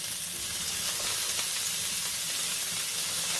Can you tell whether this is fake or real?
real